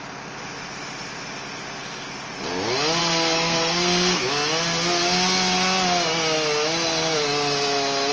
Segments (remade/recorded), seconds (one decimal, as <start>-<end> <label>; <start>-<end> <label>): 0.0-3.0 recorded; 3.0-4.2 remade; 4.2-8.1 recorded